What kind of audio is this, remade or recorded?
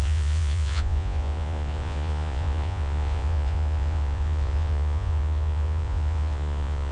remade